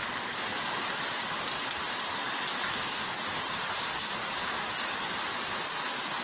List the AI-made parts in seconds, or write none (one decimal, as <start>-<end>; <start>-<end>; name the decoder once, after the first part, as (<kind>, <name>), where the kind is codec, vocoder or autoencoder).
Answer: 3.7-6.2 (vocoder, BigVGAN v2)